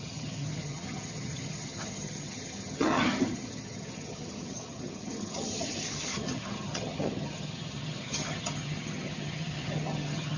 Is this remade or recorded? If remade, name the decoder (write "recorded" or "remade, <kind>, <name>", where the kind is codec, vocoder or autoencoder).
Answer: remade, vocoder, HiFi-GAN